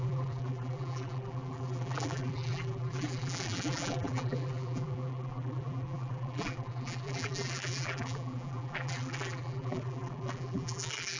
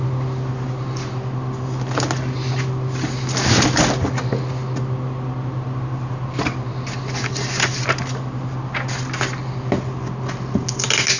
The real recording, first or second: second